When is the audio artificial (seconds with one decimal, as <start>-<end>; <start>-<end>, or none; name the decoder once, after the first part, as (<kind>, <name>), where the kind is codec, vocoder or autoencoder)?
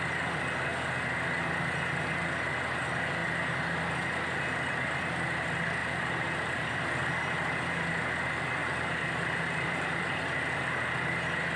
5.8-6.8 (vocoder, BigVGAN v2); 8.6-10.2